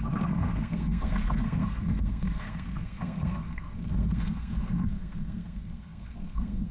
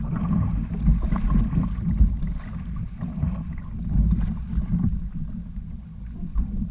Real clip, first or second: second